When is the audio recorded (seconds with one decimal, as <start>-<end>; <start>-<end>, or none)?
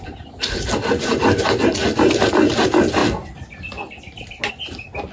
0.0-5.1